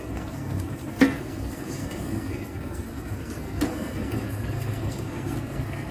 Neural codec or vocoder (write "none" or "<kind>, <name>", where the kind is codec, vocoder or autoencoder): codec, SNAC